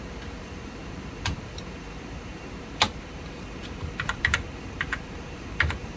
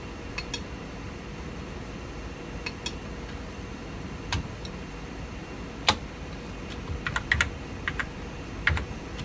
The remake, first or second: first